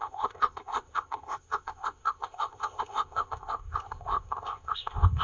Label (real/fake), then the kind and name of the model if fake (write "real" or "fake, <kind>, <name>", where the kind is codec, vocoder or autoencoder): fake, codec, ZipCodec